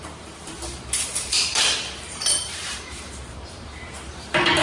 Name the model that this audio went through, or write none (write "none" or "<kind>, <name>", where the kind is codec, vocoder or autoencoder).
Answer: vocoder, BigVGAN v2